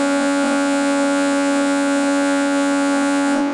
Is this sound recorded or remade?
remade